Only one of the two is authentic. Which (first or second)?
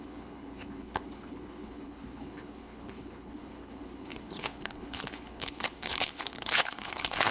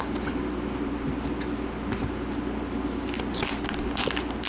second